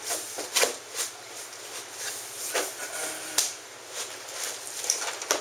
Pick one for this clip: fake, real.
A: real